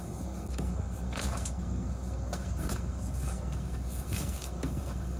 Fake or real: fake